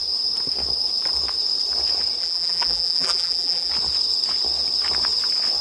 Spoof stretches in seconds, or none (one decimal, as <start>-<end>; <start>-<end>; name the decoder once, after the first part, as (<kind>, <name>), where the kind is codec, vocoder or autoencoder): 2.2-3.7 (vocoder, BigVGAN v2)